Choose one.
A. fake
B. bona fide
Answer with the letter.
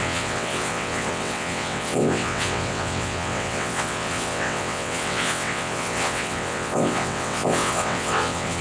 A